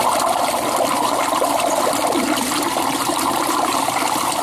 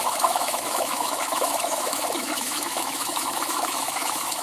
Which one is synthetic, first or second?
second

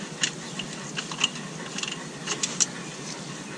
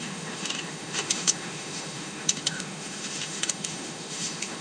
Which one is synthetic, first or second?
second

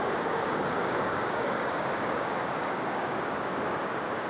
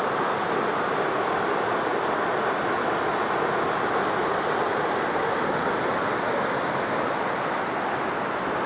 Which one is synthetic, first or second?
first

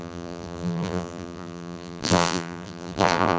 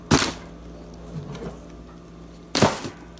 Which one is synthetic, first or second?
first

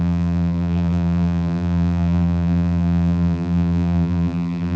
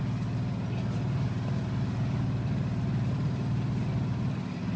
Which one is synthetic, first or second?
first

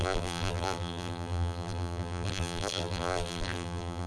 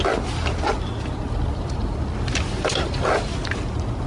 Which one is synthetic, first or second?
first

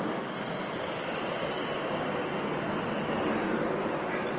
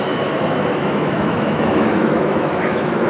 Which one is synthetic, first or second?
second